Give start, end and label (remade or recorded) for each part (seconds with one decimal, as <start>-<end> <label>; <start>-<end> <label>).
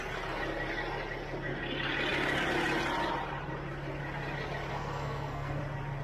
0.0-4.7 recorded; 4.7-5.6 remade; 5.6-6.0 recorded